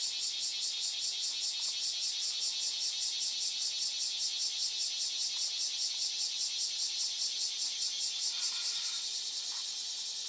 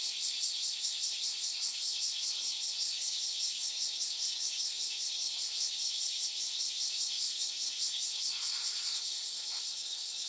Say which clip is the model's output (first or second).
second